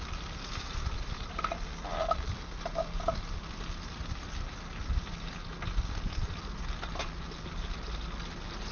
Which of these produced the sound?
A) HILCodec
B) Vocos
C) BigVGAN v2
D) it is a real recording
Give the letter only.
D